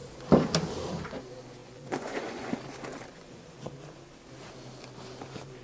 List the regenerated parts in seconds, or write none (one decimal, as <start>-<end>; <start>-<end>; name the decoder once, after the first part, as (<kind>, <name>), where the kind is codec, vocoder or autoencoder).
1.6-2.5 (vocoder, Vocos); 3.1-3.7